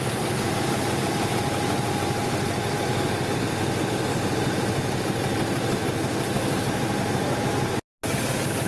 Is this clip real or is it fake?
real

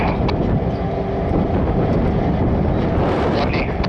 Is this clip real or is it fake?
real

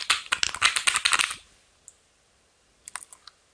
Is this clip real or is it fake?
real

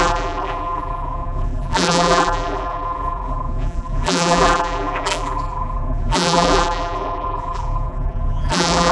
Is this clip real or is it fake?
fake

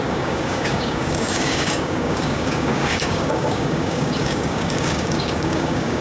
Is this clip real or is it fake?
fake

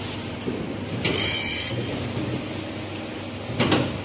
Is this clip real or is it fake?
real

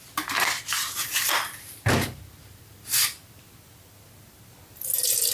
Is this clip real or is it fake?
real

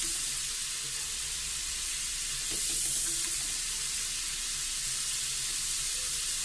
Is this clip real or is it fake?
real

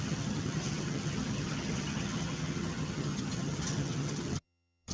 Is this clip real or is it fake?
fake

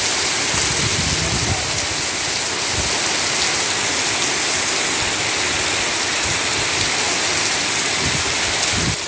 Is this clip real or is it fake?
real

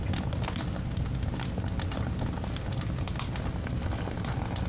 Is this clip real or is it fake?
real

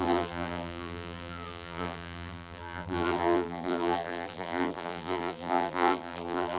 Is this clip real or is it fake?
fake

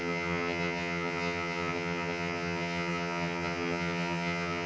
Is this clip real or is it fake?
fake